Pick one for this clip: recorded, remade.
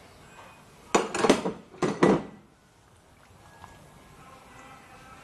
recorded